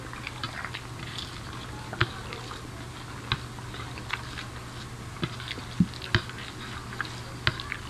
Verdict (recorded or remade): recorded